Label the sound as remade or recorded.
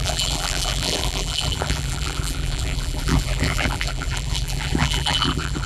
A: remade